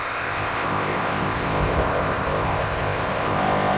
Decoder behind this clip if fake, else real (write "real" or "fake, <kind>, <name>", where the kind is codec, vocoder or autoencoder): fake, codec, ZipCodec